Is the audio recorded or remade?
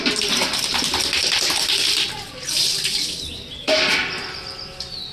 recorded